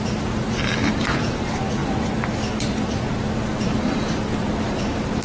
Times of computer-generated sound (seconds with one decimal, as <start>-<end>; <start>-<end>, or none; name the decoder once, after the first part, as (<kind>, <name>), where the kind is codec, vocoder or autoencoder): 0.0-5.2 (vocoder, BigVGAN v2)